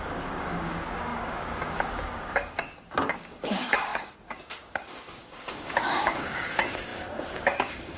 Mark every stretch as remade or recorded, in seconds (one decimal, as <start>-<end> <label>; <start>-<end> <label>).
0.0-8.0 remade